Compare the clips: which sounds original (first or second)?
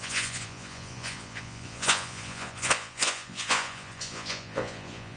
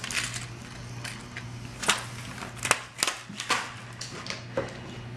second